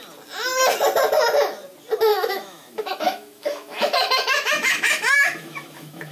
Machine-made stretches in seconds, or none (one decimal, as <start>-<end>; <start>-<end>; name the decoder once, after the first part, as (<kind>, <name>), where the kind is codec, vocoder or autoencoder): 2.1-6.1 (autoencoder, DAC-VAE)

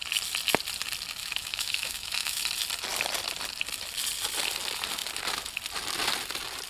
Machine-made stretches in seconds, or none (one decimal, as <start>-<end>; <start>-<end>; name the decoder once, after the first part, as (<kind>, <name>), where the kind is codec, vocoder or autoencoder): 1.2-2.4 (autoencoder, DAC-VAE)

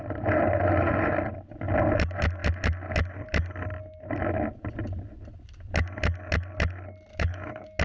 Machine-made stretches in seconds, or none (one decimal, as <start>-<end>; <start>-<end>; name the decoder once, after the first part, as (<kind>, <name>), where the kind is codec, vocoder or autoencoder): 7.1-7.8 (autoencoder, DAC-VAE)